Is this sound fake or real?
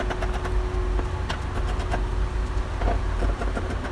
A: real